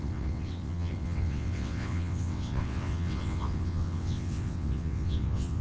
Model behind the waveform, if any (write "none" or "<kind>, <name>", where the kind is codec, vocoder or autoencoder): vocoder, WaveNeXt